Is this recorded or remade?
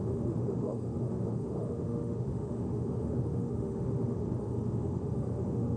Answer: remade